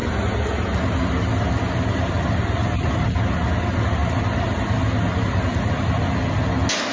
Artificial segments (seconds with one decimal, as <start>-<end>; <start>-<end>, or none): none